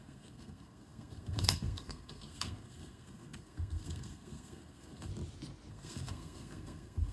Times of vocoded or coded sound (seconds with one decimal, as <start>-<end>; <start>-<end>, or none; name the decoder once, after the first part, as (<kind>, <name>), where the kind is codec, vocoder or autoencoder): 0.0-5.1 (codec, SNAC); 5.7-7.1